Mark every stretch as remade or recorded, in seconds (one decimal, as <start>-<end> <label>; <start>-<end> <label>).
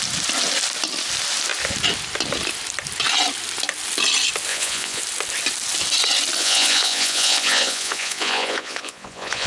0.0-4.5 recorded; 4.5-5.0 remade; 5.0-6.4 recorded; 6.4-9.5 remade